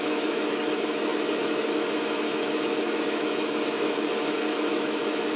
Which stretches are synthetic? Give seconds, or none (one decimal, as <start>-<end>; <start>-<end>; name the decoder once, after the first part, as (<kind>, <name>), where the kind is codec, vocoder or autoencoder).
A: 0.0-5.4 (autoencoder, DAC-VAE)